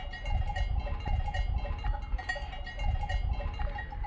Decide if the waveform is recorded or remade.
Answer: recorded